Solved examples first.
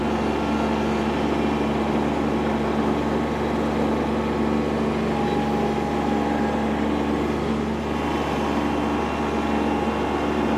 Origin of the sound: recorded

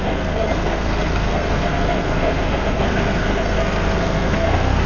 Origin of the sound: remade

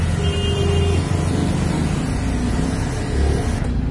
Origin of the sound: recorded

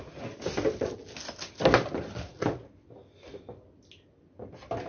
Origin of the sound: recorded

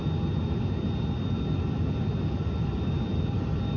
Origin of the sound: recorded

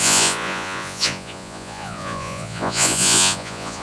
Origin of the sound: remade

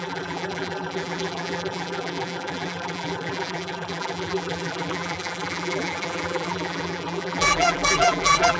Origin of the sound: remade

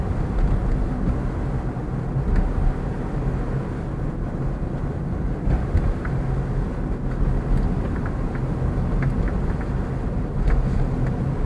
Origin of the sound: recorded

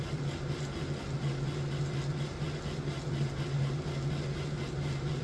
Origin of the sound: recorded